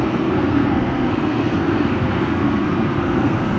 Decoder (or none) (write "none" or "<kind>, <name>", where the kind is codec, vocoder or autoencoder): codec, SNAC